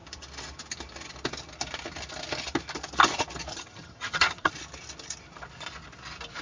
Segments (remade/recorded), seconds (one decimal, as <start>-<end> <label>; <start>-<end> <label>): 0.0-3.5 recorded; 3.5-4.5 remade; 4.5-6.4 recorded